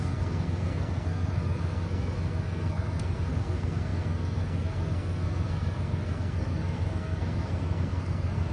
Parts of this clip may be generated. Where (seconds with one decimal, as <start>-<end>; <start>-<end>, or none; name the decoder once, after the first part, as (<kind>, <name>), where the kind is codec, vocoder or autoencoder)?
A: 0.0-8.5 (codec, SNAC)